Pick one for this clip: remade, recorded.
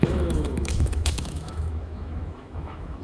remade